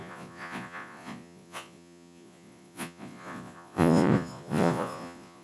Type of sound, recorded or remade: remade